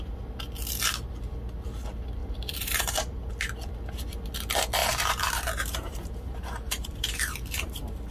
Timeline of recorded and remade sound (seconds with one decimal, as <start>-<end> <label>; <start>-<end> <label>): 0.0-2.2 recorded; 2.2-3.3 remade; 3.3-4.8 recorded; 4.8-8.1 remade